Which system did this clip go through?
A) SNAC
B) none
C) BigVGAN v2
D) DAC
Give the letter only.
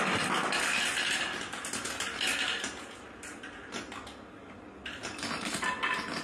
B